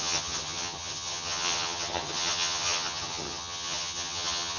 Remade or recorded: remade